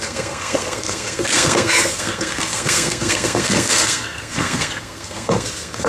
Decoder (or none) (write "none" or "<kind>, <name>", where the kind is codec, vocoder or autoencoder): codec, SNAC